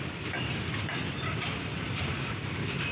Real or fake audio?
real